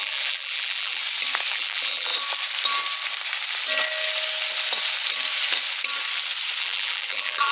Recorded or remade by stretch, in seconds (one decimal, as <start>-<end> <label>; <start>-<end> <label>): 0.0-1.0 remade; 1.0-1.5 recorded; 1.5-2.1 remade; 2.1-6.6 recorded; 6.6-7.5 remade